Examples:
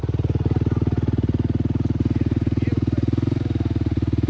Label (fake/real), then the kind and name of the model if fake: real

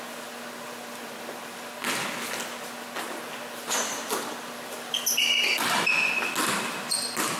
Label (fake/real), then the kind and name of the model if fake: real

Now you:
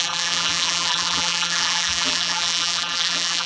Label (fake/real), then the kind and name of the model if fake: fake, vocoder, BigVGAN v2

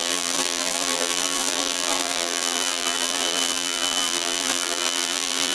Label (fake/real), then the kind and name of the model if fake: fake, vocoder, BigVGAN v2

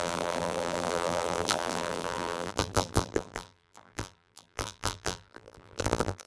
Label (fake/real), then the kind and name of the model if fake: fake, vocoder, BigVGAN v2